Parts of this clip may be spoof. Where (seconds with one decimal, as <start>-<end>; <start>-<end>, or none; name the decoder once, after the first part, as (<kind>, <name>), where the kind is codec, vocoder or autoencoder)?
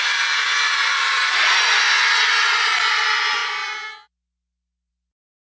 none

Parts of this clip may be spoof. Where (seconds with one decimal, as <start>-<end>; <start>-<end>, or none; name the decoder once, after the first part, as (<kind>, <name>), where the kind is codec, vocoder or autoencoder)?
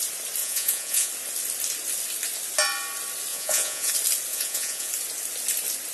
0.4-1.1 (vocoder, Vocos); 3.3-3.9; 4.3-4.9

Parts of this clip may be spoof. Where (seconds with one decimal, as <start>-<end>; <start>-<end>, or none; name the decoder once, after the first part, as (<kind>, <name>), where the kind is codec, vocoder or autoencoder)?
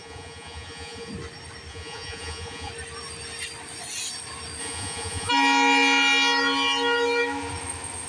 0.0-1.1 (vocoder, Vocos); 1.7-2.7; 4.6-5.3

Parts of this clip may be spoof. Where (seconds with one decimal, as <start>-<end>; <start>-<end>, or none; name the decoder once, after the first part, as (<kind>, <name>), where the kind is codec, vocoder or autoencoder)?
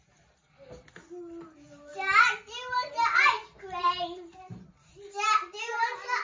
none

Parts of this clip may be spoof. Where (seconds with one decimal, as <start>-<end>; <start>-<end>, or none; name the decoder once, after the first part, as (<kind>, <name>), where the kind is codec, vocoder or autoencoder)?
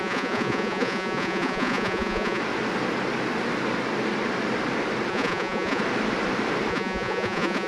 0.0-2.4 (vocoder, Vocos); 5.1-5.8; 6.7-7.7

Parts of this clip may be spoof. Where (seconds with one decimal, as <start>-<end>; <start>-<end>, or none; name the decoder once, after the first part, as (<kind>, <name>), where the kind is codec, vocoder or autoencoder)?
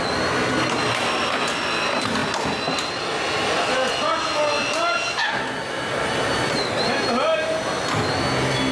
none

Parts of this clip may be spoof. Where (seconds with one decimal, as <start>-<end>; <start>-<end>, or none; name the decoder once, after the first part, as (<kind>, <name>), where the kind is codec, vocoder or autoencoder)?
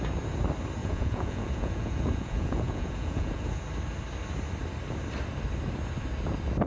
0.8-3.6 (vocoder, Vocos)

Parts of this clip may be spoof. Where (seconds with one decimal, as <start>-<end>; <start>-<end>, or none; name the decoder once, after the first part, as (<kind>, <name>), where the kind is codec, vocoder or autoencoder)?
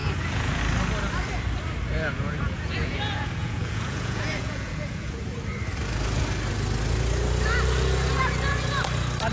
0.0-0.6 (vocoder, Vocos); 1.9-5.4